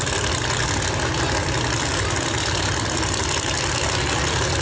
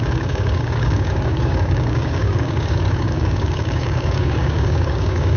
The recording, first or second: first